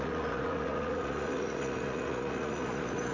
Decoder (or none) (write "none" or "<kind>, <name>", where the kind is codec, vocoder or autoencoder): vocoder, Vocos